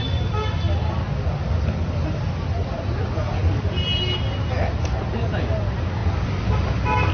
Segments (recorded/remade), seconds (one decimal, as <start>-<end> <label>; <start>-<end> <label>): 0.0-7.1 recorded